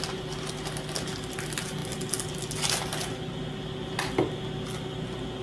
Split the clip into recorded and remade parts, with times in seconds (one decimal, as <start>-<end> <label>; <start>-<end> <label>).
0.0-5.4 recorded

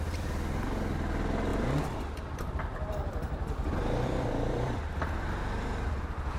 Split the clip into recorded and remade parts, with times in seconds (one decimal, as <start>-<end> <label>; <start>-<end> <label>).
0.0-1.5 recorded; 1.5-4.8 remade; 4.8-6.4 recorded

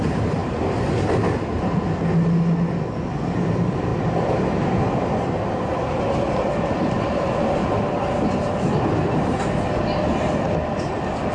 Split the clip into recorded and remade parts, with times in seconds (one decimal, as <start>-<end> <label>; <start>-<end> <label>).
0.0-11.3 recorded

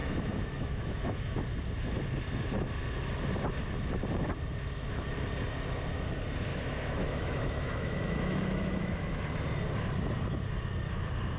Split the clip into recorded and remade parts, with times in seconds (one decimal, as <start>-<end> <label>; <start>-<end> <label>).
0.0-1.4 remade; 1.4-6.5 recorded; 6.5-9.2 remade; 9.2-11.4 recorded